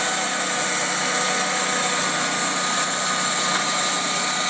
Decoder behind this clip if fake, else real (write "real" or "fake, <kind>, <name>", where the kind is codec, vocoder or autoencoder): real